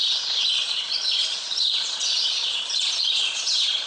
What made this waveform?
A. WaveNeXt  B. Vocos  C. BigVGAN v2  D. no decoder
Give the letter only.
B